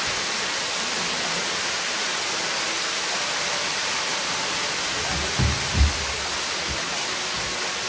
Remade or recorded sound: recorded